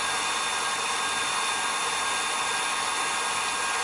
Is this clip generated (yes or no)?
no